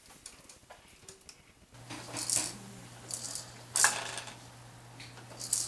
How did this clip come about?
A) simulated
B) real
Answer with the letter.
B